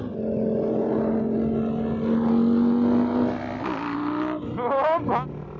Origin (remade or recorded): recorded